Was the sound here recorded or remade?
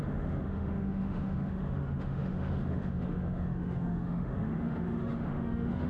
remade